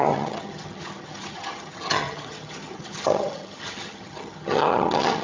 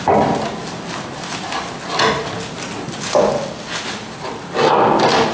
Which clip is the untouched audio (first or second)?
second